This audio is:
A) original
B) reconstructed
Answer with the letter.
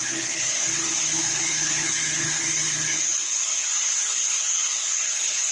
B